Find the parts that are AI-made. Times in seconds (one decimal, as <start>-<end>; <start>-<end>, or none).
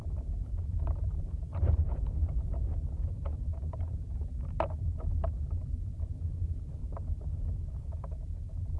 0.0-6.8; 7.7-8.8